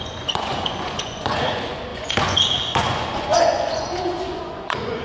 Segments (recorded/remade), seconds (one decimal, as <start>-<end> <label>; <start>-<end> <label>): 0.0-5.0 remade